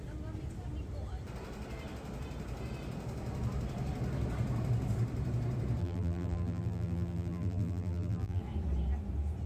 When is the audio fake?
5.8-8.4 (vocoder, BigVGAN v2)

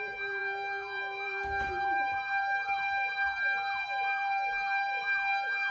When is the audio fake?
0.0-5.7 (vocoder, BigVGAN v2)

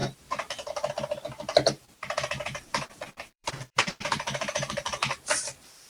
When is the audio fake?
0.0-5.9 (vocoder, BigVGAN v2)

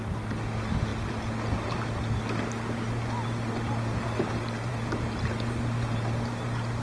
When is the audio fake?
none

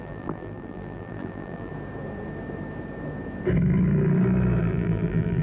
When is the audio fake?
0.0-1.7 (vocoder, BigVGAN v2); 4.6-5.4

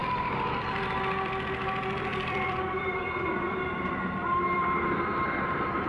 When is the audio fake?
0.0-1.0 (vocoder, BigVGAN v2); 2.1-5.1

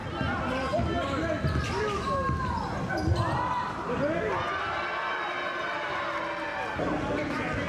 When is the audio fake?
none